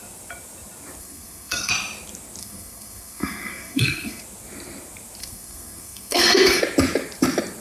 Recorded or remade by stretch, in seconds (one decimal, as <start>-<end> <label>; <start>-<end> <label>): 0.0-1.0 recorded; 1.0-1.7 remade; 1.7-2.4 recorded; 2.4-4.2 remade; 4.2-5.2 recorded; 5.2-6.6 remade; 6.6-7.6 recorded